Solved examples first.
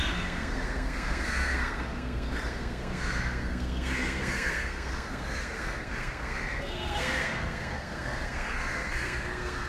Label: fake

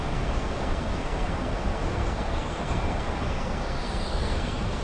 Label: fake